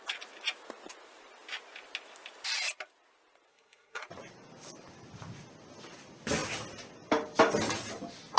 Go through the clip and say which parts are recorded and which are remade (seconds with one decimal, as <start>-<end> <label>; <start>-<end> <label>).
0.0-3.5 recorded; 3.5-4.0 remade; 4.0-8.4 recorded